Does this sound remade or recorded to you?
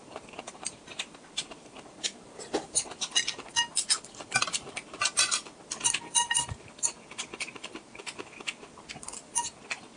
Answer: remade